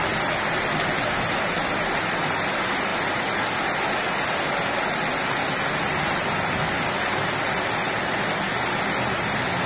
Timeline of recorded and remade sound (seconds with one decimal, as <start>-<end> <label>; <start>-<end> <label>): 0.0-9.7 recorded